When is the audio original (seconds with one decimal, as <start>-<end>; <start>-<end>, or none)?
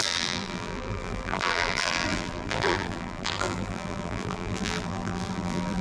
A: none